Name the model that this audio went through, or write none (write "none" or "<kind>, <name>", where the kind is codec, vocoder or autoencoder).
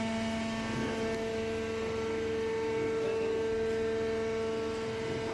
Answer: none